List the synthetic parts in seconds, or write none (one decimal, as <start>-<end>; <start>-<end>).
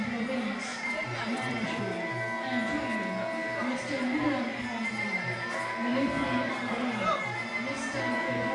0.7-1.8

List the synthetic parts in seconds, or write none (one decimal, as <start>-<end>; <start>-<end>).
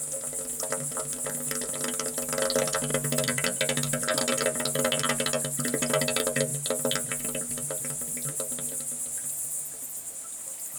none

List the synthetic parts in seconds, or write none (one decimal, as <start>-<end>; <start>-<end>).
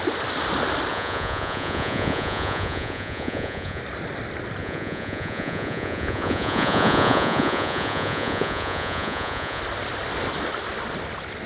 0.9-3.8; 4.6-9.6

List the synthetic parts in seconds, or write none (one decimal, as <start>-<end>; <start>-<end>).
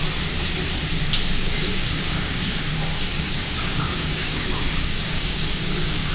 1.4-2.7; 3.1-6.1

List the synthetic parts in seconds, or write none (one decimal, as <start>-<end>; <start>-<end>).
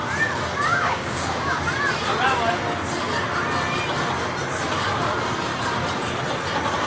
0.7-1.6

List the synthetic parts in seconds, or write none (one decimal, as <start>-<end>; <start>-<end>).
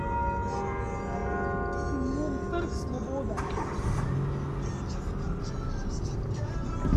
none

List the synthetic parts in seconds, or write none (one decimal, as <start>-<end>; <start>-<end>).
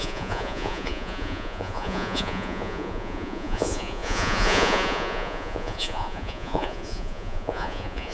0.0-8.1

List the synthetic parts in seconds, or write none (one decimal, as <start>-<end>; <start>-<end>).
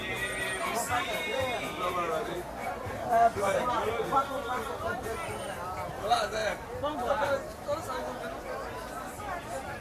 2.6-3.9